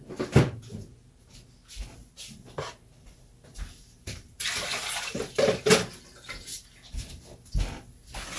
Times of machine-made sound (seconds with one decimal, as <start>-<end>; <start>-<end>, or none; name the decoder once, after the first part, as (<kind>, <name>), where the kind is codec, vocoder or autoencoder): 2.0-2.6 (vocoder, BigVGAN v2); 3.5-5.3; 6.5-7.1